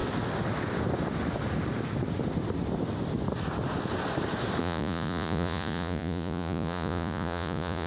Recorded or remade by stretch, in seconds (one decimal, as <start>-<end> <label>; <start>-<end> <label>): 0.0-4.6 recorded; 4.6-7.9 remade